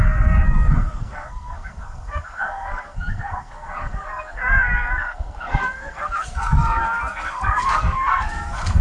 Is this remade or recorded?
remade